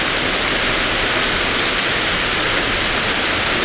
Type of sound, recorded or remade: recorded